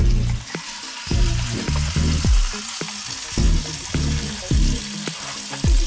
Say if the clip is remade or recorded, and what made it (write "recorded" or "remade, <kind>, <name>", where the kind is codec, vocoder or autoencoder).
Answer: recorded